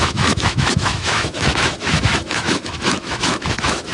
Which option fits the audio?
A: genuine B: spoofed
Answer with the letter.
B